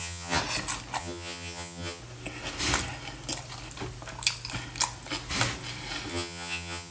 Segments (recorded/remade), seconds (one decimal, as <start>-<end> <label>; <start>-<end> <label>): 0.0-0.4 remade; 0.4-1.0 recorded; 1.0-2.0 remade; 2.0-6.1 recorded; 6.1-6.9 remade